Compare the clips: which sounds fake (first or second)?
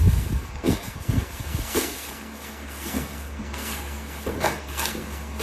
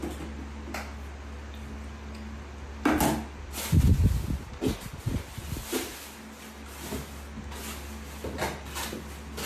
first